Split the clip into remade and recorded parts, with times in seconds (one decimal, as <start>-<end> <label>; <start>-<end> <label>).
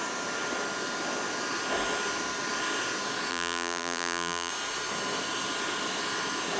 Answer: 0.0-3.3 recorded; 3.3-4.5 remade; 4.5-6.6 recorded